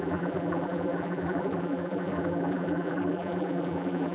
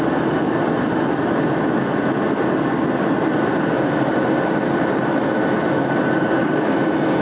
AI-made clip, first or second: first